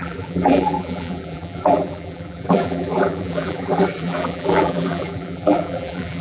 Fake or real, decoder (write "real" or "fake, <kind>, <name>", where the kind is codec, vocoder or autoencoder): fake, vocoder, BigVGAN v2